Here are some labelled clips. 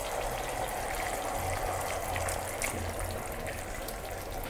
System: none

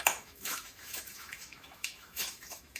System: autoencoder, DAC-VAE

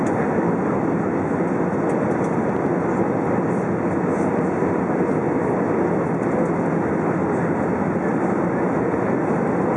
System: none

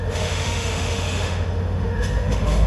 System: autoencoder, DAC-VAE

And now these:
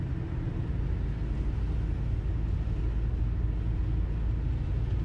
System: none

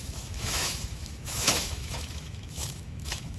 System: autoencoder, DAC-VAE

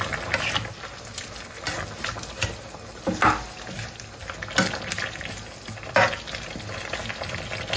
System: none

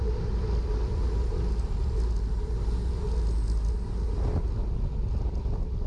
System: none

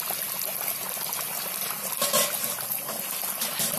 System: none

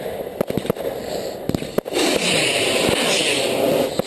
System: none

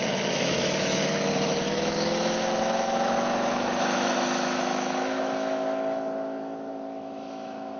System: autoencoder, DAC-VAE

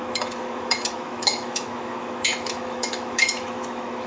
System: autoencoder, DAC-VAE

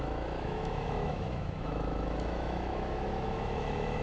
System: autoencoder, DAC-VAE